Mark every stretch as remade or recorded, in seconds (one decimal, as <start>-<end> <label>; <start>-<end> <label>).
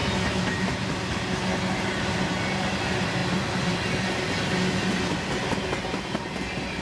0.0-6.8 recorded